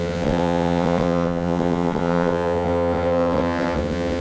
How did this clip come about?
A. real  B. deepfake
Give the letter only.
B